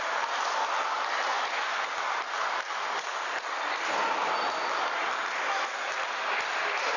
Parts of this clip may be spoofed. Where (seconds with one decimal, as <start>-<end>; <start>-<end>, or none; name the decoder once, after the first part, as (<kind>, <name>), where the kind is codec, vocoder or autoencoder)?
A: 1.3-1.9 (vocoder, Vocos)